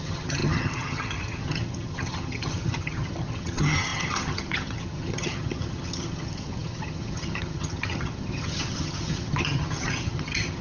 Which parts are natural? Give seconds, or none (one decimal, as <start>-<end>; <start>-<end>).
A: none